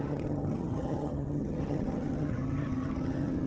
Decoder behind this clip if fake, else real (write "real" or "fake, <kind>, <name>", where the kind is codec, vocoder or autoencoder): fake, vocoder, HiFi-GAN